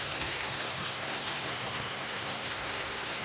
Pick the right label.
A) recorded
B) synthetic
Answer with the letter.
B